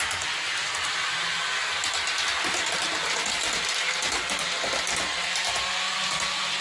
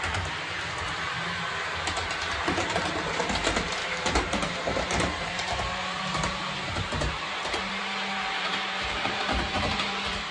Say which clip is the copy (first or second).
second